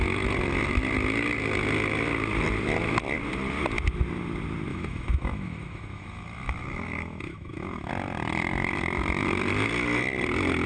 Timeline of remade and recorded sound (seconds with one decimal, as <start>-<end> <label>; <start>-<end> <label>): 0.0-4.7 recorded; 4.7-7.9 remade; 7.9-10.7 recorded